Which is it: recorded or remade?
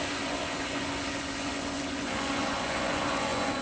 remade